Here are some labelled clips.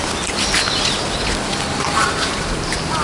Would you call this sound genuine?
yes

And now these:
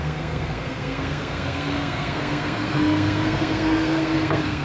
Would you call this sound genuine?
no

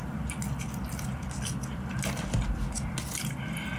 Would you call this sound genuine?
yes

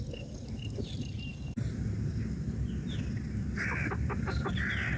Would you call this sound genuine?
yes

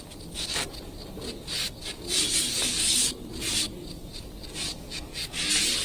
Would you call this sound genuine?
yes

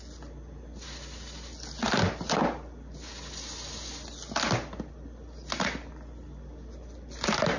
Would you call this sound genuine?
yes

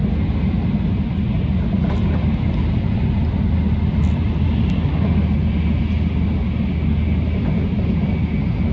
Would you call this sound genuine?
yes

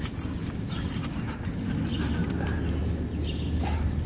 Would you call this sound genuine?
yes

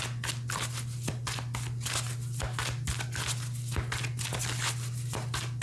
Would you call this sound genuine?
yes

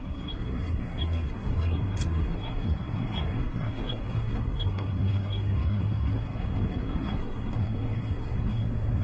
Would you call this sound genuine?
no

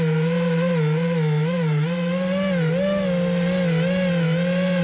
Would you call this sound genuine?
yes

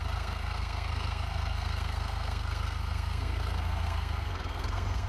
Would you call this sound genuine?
no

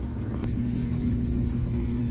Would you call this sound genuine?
no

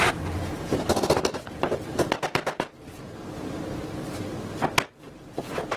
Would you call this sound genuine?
yes